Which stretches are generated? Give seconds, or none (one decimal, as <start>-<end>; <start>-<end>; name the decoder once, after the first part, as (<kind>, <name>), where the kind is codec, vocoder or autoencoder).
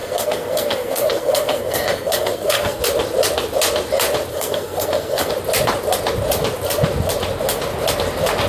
0.0-2.8 (codec, SNAC); 4.3-5.3